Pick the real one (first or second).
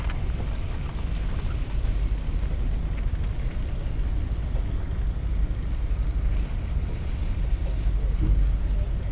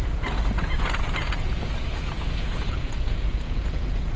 first